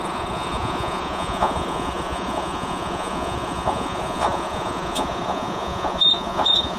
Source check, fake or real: fake